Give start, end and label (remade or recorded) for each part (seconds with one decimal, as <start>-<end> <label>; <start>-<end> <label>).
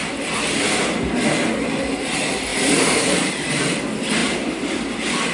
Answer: 0.0-2.5 recorded; 2.5-3.6 remade; 3.6-4.2 recorded; 4.2-4.7 remade; 4.7-5.3 recorded